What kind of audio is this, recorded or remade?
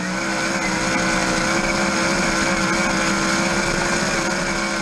recorded